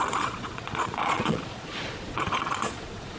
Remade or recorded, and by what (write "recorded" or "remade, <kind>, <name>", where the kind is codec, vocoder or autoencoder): remade, vocoder, Vocos